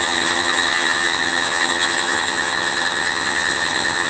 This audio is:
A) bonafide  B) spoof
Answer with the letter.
B